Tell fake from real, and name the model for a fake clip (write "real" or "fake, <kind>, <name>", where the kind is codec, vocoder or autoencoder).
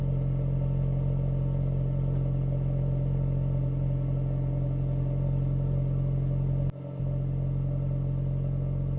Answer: real